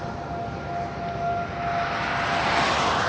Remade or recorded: recorded